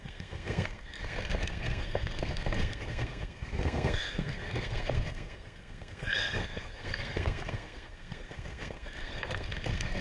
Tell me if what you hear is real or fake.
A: fake